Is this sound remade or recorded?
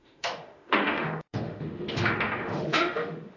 remade